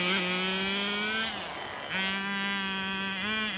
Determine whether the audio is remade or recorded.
recorded